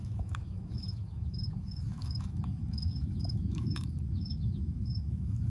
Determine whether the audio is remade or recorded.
remade